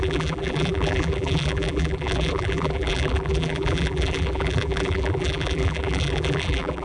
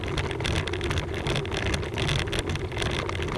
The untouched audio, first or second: second